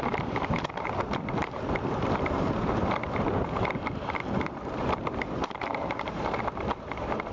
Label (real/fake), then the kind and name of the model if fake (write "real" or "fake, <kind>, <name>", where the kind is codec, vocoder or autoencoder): fake, vocoder, BigVGAN v2